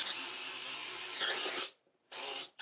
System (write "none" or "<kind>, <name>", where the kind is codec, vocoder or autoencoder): none